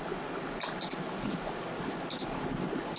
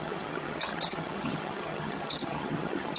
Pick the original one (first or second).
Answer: first